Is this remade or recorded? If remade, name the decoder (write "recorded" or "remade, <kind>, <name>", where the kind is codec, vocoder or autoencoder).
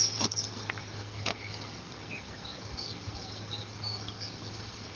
remade, codec, SNAC